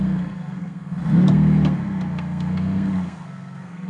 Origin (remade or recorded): remade